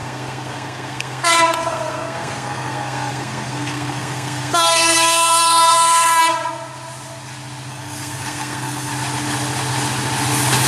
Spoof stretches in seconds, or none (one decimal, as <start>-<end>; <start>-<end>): 0.0-6.2; 7.7-8.9